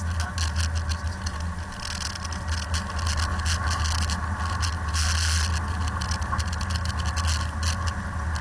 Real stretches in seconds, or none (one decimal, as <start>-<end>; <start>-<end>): 0.0-8.4